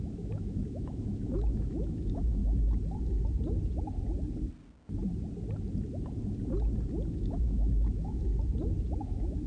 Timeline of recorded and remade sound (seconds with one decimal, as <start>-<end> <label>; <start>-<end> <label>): 0.0-2.4 remade; 2.4-7.1 recorded; 7.1-8.2 remade; 8.2-9.0 recorded; 9.0-9.5 remade

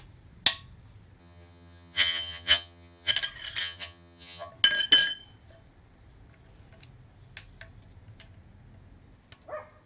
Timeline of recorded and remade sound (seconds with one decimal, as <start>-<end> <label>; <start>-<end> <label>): 0.0-1.2 recorded; 1.2-3.1 remade; 3.1-3.6 recorded; 3.6-4.5 remade; 4.5-9.9 recorded

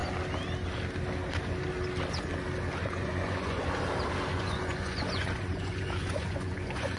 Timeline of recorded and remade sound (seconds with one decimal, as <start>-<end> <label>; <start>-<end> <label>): 0.0-2.8 recorded; 2.8-3.6 remade; 3.6-4.3 recorded; 4.3-7.0 remade

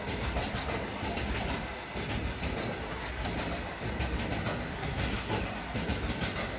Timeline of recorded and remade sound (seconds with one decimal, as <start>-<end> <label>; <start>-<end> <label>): 0.0-4.7 recorded; 4.7-5.4 remade; 5.4-6.6 recorded

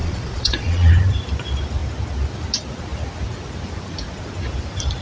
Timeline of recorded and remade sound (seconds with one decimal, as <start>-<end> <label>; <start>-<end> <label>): 0.0-0.9 remade; 0.9-5.0 recorded

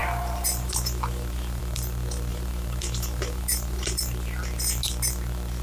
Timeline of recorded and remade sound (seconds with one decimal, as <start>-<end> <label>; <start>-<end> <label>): 0.0-1.6 remade; 1.6-2.3 recorded; 2.3-4.4 remade; 4.4-5.6 recorded

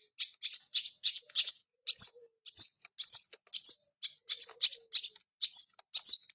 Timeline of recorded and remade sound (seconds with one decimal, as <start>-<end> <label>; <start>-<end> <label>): 0.0-0.6 recorded; 0.6-1.5 remade; 1.5-6.3 recorded

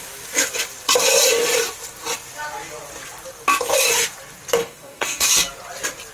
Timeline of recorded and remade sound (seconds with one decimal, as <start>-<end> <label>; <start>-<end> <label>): 0.0-4.6 recorded; 4.6-5.3 remade; 5.3-6.1 recorded